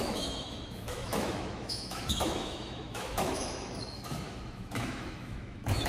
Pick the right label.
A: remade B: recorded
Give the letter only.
A